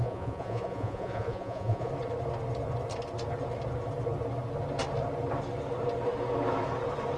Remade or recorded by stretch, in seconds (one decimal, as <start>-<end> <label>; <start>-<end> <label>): 0.0-1.9 remade; 1.9-7.2 recorded